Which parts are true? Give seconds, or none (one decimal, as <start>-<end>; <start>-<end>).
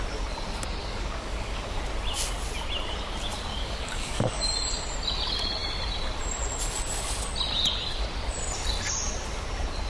0.0-0.8; 1.8-3.5; 4.4-9.9